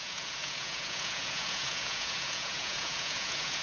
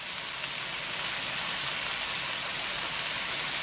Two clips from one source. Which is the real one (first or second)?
second